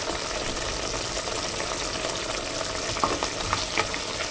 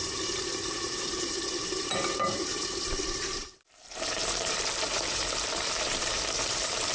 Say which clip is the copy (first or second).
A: second